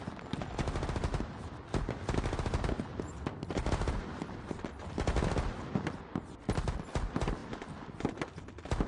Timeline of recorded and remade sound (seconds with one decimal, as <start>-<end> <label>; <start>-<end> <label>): 0.0-8.9 recorded